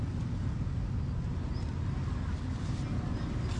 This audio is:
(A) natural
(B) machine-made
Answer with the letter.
A